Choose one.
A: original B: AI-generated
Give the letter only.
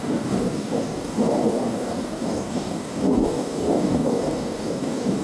B